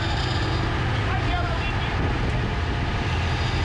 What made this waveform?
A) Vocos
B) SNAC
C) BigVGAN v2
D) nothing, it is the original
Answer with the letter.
D